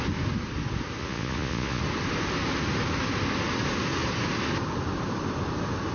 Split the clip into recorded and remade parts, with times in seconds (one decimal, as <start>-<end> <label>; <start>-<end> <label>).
0.0-1.0 recorded; 1.0-1.8 remade; 1.8-5.9 recorded